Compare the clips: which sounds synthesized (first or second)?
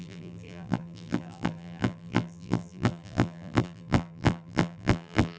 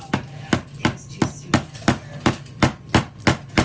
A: first